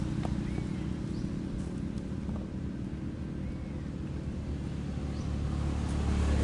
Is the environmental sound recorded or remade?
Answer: recorded